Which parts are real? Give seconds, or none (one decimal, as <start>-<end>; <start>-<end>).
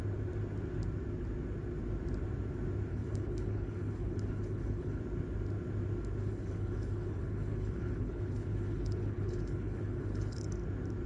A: 0.0-2.9; 5.0-6.2; 10.5-11.1